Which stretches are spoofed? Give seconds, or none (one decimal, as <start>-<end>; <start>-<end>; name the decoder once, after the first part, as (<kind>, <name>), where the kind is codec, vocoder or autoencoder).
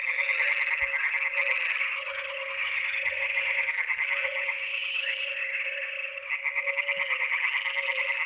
1.8-3.7 (vocoder, HiFi-GAN); 4.2-6.3